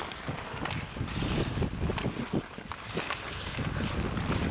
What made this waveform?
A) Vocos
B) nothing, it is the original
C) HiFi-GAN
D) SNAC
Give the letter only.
B